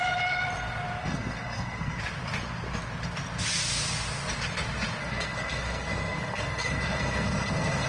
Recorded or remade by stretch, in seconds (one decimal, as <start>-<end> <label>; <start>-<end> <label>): 0.0-1.0 recorded; 1.0-2.0 remade; 2.0-5.0 recorded; 5.0-7.9 remade